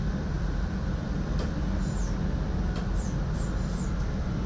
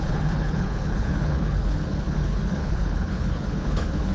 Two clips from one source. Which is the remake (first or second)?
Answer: second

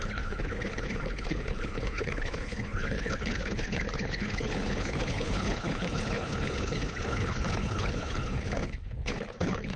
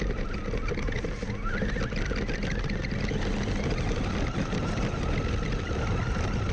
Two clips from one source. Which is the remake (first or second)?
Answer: first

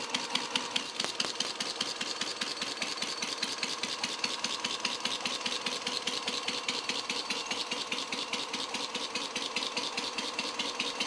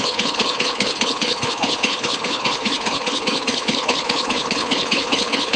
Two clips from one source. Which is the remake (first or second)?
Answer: second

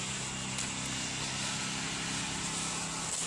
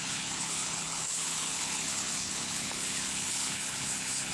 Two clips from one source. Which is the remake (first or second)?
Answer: second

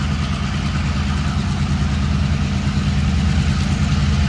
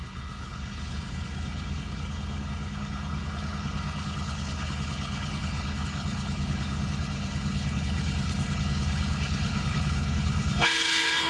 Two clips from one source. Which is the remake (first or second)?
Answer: second